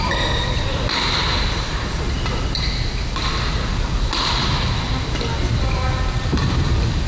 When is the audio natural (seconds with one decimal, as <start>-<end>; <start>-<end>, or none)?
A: 0.0-7.1